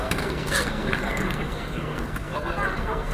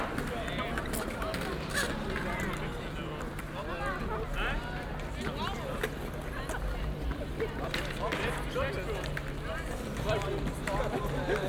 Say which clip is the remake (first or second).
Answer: first